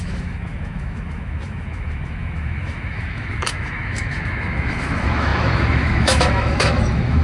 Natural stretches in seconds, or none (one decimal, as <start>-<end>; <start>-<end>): none